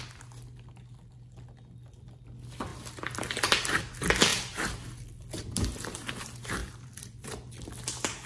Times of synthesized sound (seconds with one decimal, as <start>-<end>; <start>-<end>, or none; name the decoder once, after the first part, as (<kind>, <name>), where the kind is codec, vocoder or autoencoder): 4.3-6.1 (vocoder, BigVGAN v2); 6.6-7.3

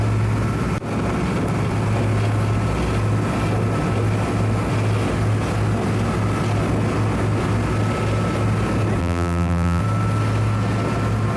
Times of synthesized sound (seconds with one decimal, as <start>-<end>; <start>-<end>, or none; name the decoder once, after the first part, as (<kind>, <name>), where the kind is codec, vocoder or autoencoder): 9.0-9.8 (vocoder, BigVGAN v2)

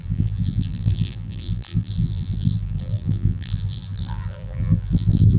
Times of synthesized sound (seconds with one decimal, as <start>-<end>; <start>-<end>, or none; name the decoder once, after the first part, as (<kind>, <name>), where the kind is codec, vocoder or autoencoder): 0.0-5.4 (vocoder, BigVGAN v2)

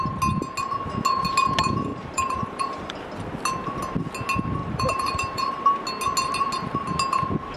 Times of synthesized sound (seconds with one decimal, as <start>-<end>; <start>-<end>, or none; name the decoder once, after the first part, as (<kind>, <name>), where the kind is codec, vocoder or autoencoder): 1.9-2.9 (vocoder, BigVGAN v2); 4.6-5.5

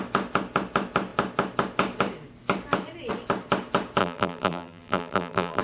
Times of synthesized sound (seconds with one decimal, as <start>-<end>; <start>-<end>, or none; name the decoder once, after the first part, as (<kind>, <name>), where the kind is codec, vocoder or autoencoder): 4.0-5.6 (vocoder, BigVGAN v2)